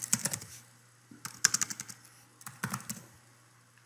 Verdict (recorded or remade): recorded